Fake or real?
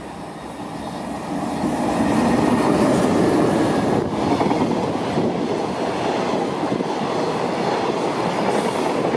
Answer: real